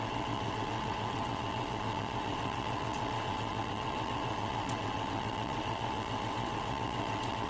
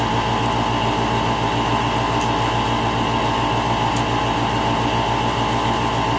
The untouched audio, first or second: second